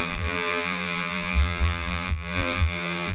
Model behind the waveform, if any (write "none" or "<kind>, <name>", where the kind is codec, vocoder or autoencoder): vocoder, BigVGAN v2